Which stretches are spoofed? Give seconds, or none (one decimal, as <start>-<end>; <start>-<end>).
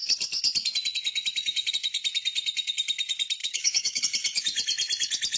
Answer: 3.4-4.0